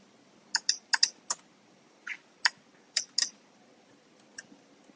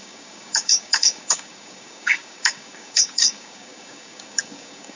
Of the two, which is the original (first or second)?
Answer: first